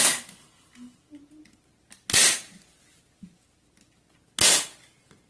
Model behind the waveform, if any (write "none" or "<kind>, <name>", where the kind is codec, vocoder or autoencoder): none